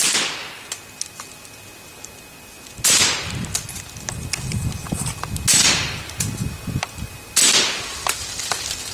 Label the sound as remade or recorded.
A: recorded